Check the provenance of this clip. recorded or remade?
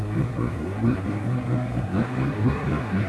remade